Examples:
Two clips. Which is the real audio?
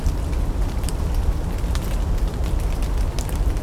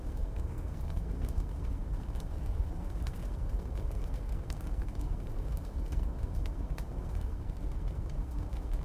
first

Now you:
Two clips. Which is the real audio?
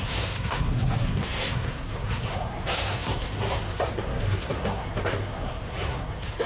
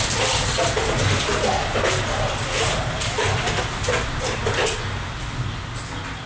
second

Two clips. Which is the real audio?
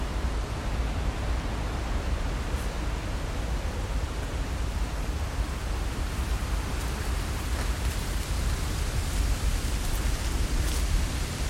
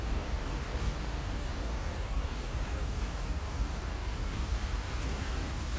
first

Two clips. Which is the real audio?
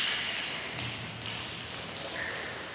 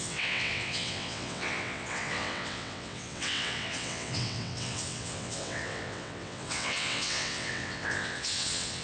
first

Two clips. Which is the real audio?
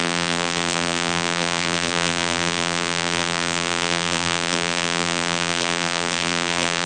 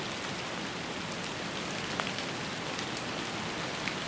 second